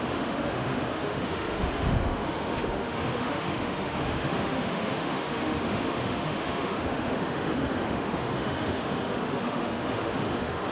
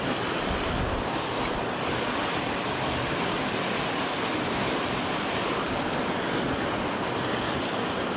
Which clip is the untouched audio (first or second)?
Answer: second